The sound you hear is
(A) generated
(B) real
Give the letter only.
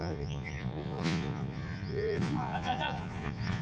A